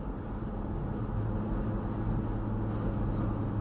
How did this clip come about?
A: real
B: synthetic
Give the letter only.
A